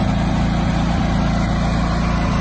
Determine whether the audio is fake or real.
real